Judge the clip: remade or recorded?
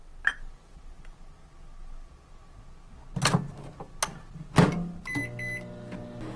recorded